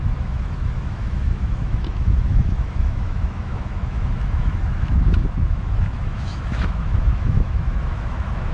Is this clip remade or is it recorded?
remade